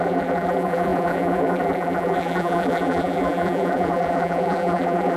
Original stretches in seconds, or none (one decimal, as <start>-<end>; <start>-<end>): none